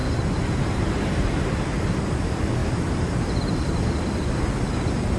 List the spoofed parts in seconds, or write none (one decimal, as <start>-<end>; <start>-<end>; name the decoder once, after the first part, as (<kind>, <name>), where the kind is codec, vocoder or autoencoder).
0.0-1.4 (vocoder, BigVGAN v2); 2.6-3.4